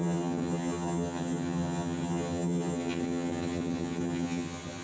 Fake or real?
fake